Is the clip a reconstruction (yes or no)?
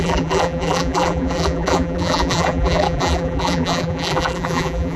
yes